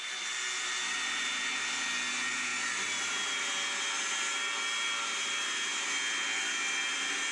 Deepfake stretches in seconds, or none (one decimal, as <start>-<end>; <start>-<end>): none